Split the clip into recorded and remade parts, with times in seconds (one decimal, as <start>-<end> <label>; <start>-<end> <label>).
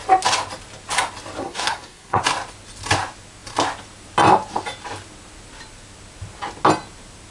0.0-1.4 recorded; 1.4-2.2 remade; 2.2-7.3 recorded